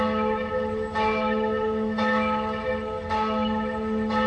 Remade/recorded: remade